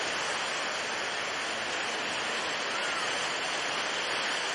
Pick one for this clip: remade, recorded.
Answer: recorded